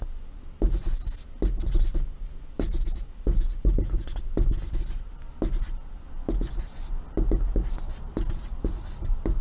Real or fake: real